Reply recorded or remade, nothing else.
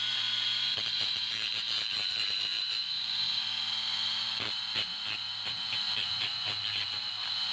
remade